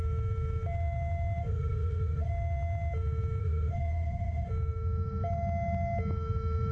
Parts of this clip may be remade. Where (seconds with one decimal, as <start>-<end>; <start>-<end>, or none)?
1.4-2.3; 3.4-4.5